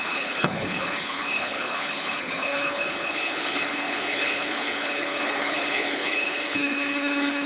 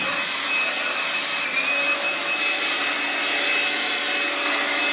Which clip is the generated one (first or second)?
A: first